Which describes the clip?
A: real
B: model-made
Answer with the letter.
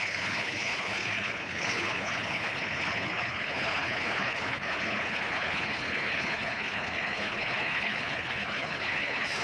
B